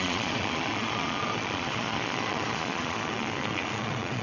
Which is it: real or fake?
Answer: fake